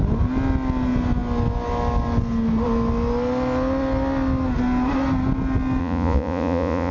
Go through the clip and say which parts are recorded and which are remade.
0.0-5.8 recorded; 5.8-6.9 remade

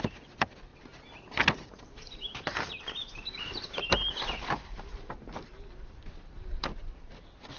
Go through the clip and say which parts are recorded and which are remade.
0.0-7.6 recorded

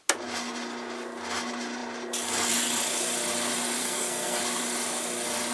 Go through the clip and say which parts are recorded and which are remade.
0.0-3.8 recorded; 3.8-4.4 remade; 4.4-5.5 recorded

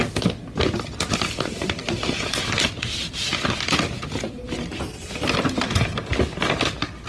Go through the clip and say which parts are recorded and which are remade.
0.0-7.1 recorded